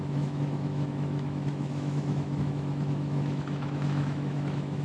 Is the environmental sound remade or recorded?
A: remade